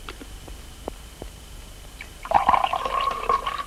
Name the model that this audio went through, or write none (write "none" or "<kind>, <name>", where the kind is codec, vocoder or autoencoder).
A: vocoder, BigVGAN v2